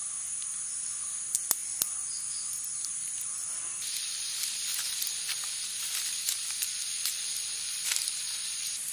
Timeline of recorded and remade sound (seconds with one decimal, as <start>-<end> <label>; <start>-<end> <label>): 0.0-8.9 recorded